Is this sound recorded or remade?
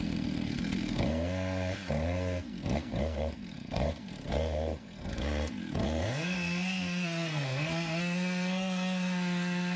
remade